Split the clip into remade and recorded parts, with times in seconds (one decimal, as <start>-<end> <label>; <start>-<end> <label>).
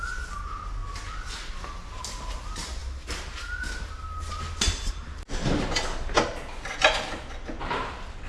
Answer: 0.0-8.3 recorded